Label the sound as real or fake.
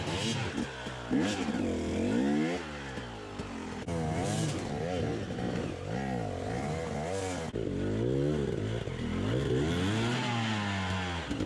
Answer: real